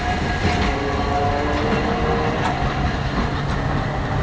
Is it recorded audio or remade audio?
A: recorded